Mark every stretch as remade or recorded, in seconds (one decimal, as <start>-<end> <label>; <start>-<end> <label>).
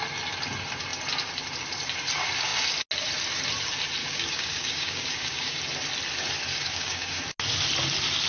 0.0-4.0 recorded; 4.0-5.6 remade; 5.6-6.5 recorded; 6.5-7.2 remade; 7.2-8.3 recorded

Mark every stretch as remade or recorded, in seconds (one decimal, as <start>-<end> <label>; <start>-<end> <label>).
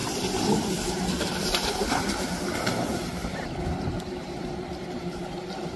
0.0-1.0 remade; 1.0-3.2 recorded; 3.2-5.8 remade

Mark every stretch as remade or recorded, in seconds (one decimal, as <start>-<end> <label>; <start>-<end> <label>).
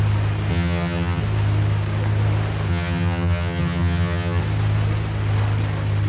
0.0-0.5 recorded; 0.5-1.2 remade; 1.2-2.7 recorded; 2.7-4.4 remade; 4.4-6.1 recorded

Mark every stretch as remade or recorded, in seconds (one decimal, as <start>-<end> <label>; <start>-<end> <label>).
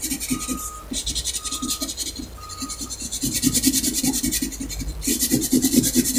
0.0-6.2 recorded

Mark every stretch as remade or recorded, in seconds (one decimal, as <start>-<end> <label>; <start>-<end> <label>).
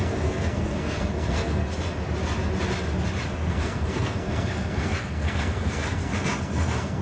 0.0-1.6 remade; 1.6-3.5 recorded; 3.5-7.0 remade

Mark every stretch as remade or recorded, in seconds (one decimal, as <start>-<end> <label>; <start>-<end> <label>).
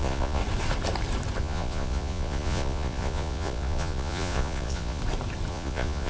0.0-0.4 remade; 0.4-1.4 recorded; 1.4-5.0 remade; 5.0-5.5 recorded; 5.5-6.1 remade